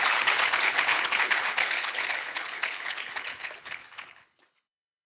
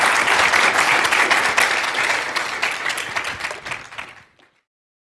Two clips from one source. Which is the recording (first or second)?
second